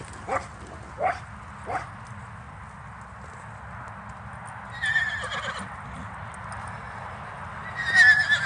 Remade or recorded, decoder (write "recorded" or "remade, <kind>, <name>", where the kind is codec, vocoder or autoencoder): recorded